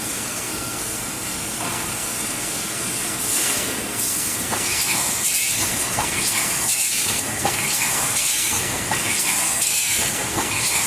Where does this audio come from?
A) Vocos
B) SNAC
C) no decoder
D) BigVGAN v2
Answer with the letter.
B